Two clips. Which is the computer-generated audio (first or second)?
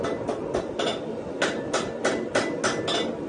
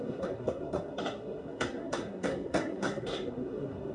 second